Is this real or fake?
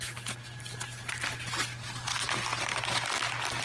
real